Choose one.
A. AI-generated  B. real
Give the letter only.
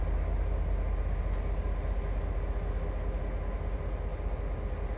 B